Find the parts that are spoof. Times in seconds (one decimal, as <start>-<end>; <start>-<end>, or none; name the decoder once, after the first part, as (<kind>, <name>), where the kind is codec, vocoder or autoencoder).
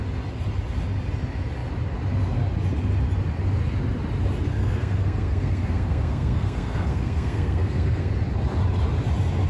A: 4.6-8.1 (codec, SNAC)